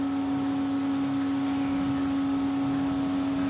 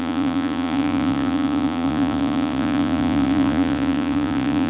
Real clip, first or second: first